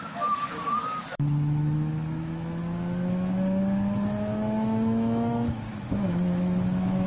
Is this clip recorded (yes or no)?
no